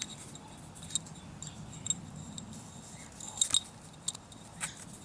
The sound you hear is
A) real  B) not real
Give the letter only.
A